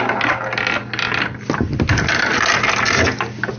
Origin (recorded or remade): recorded